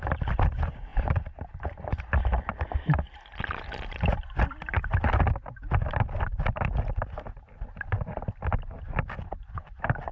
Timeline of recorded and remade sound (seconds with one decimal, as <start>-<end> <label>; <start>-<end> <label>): 0.0-10.1 recorded